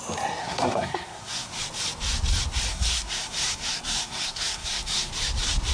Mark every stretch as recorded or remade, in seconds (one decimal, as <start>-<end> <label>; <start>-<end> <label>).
0.0-0.4 recorded; 0.4-1.6 remade; 1.6-2.7 recorded; 2.7-5.1 remade; 5.1-5.7 recorded